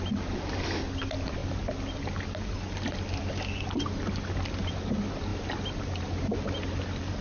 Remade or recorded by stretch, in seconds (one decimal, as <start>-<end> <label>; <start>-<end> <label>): 0.0-7.2 recorded